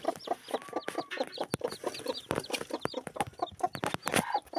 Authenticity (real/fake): real